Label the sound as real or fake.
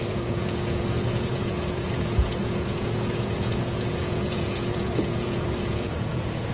fake